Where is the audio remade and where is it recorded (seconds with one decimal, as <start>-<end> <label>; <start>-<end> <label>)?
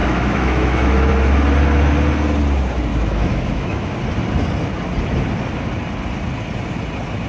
0.0-1.1 remade; 1.1-2.9 recorded; 2.9-3.9 remade; 3.9-7.3 recorded